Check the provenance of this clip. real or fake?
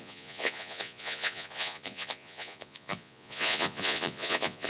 fake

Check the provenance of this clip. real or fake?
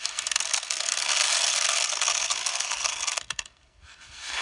fake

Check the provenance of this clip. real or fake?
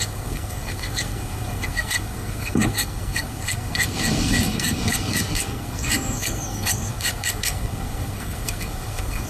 fake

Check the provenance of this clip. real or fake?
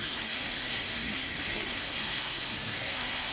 fake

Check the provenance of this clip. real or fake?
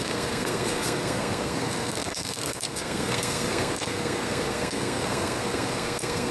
fake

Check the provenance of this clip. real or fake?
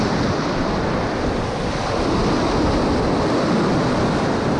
real